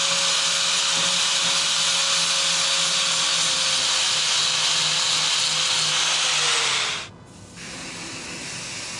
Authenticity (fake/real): real